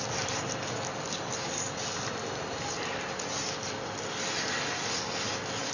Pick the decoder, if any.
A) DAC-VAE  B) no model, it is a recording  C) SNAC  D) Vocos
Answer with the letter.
B